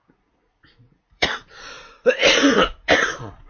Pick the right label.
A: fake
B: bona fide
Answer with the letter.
A